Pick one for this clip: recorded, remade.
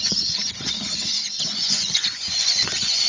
remade